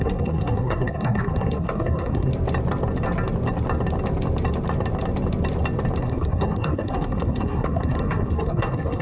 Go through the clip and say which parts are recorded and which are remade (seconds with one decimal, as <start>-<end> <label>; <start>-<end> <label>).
0.0-2.3 remade; 2.3-6.0 recorded; 6.0-9.0 remade